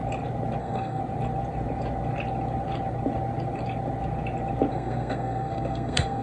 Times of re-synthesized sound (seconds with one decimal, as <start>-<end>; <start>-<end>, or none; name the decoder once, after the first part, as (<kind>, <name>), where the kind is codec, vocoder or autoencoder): 0.6-1.0 (codec, SNAC); 4.7-6.2